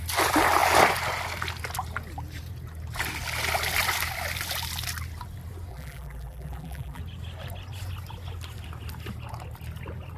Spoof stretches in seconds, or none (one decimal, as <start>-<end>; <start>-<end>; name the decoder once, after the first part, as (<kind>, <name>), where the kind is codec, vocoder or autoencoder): 5.7-7.0 (vocoder, BigVGAN v2)

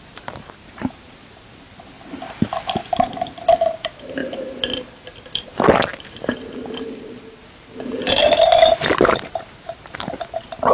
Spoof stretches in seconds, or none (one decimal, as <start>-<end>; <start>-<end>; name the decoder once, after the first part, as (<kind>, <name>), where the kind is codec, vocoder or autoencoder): 0.0-4.2 (vocoder, BigVGAN v2); 8.1-8.5; 9.1-10.7